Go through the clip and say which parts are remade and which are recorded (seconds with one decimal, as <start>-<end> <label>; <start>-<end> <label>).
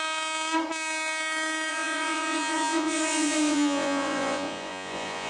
0.0-1.7 recorded; 1.7-5.3 remade